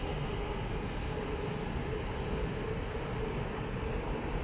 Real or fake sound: real